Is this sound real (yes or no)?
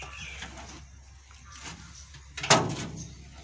yes